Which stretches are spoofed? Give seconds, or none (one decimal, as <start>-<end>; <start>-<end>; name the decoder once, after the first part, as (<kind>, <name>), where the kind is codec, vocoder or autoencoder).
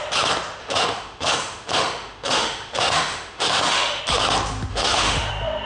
0.6-4.0 (autoencoder, DAC-VAE); 4.7-5.3